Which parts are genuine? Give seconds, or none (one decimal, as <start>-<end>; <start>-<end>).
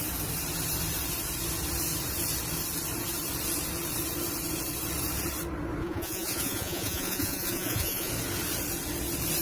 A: 0.0-5.8; 8.1-9.4